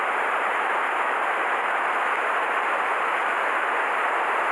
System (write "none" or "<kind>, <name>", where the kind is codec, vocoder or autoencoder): none